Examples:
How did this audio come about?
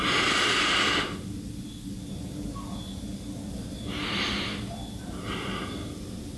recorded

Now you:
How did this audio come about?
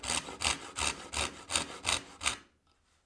recorded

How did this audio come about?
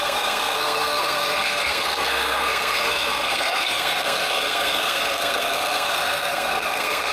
remade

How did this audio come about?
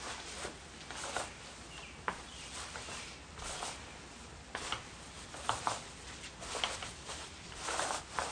recorded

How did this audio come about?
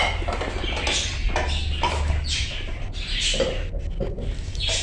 recorded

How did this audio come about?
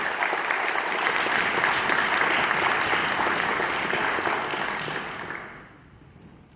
recorded